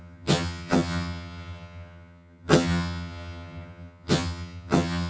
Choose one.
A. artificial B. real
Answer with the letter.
A